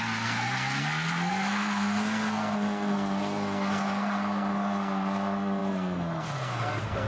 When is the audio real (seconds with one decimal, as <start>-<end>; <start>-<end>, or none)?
none